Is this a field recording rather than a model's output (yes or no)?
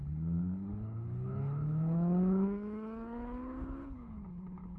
no